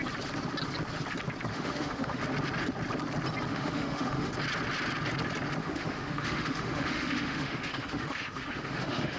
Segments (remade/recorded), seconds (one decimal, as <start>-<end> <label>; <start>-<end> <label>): 0.0-1.5 recorded; 1.5-2.2 remade; 2.2-3.5 recorded; 3.5-4.3 remade; 4.3-5.6 recorded; 5.6-9.2 remade